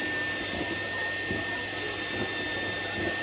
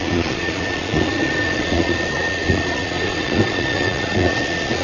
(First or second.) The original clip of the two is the first